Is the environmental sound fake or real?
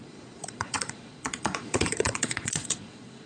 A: fake